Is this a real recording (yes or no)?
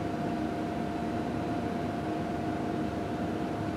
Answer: yes